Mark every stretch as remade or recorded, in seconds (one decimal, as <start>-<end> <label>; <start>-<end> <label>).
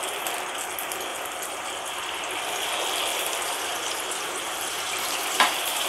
0.0-1.1 recorded; 1.1-1.9 remade; 1.9-3.1 recorded; 3.1-5.9 remade